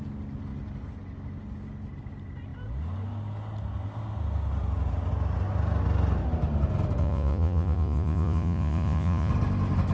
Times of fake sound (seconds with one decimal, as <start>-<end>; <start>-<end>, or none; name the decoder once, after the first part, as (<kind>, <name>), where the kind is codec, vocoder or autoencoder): 7.0-9.3 (vocoder, Vocos)